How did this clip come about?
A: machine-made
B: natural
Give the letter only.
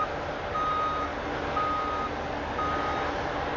B